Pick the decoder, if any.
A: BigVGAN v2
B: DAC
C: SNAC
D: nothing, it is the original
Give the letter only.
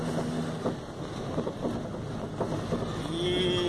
D